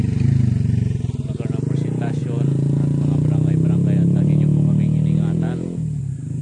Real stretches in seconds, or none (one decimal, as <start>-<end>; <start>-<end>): 0.0-6.4